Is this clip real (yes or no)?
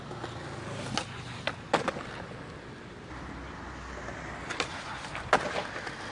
yes